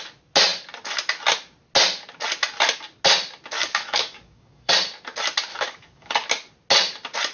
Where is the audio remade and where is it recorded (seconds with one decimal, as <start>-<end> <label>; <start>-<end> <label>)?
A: 0.0-3.6 recorded; 3.6-4.7 remade; 4.7-5.5 recorded; 5.5-6.1 remade; 6.1-7.3 recorded